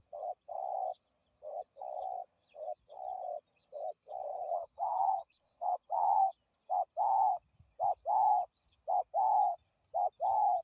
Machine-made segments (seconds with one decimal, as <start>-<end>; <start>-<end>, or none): 4.3-6.3